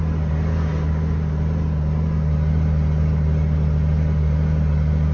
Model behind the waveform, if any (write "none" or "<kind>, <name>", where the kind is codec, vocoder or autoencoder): none